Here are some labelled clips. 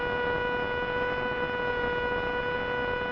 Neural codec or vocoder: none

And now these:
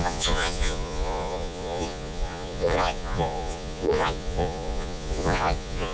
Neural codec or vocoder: vocoder, Vocos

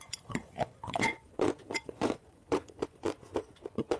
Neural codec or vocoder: vocoder, Vocos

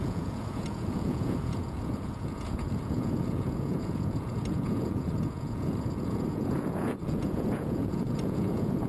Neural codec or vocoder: vocoder, Vocos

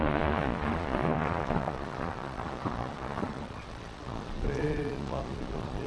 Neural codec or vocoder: vocoder, Vocos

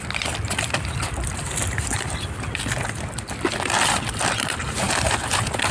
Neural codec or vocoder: none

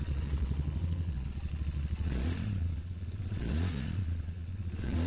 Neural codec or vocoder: vocoder, Vocos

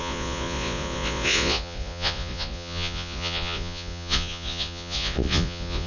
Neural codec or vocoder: vocoder, Vocos